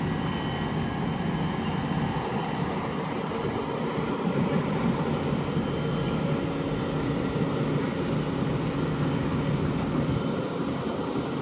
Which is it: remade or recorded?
recorded